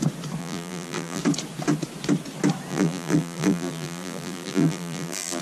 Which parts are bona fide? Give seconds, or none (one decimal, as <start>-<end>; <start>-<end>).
0.0-0.4; 1.2-2.7